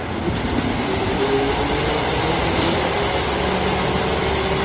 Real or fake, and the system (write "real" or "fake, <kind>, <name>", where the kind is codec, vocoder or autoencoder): real